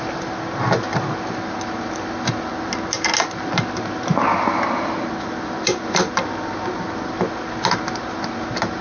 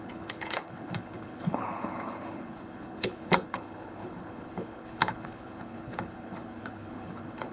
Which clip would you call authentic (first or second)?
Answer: first